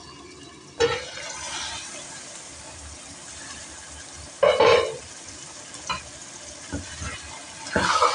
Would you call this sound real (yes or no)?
yes